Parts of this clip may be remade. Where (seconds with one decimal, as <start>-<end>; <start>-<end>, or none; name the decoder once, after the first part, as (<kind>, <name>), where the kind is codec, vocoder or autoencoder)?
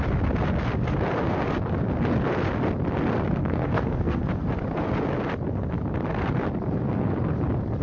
3.4-4.2 (codec, SNAC)